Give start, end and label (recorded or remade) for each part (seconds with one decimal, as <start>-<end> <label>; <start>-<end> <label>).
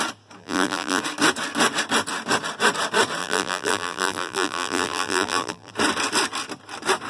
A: 0.0-0.4 recorded; 0.4-1.0 remade; 1.0-3.2 recorded; 3.2-5.7 remade; 5.7-7.1 recorded